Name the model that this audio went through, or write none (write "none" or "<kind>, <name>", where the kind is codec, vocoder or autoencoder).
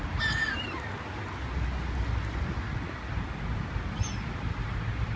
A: none